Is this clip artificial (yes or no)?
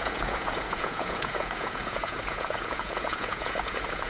yes